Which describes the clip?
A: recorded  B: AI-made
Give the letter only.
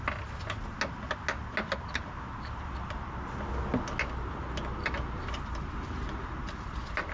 A